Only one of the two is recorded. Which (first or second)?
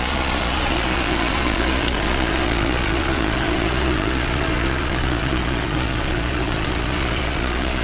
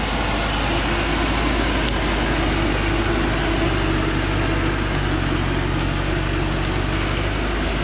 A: second